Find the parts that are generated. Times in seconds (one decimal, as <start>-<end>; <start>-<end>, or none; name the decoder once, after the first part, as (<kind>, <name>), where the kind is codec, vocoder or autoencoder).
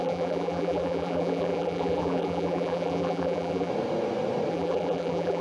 0.0-3.7 (vocoder, BigVGAN v2); 4.5-5.4